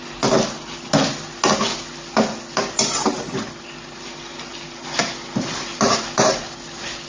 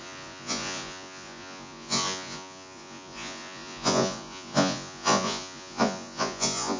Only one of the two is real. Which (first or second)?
first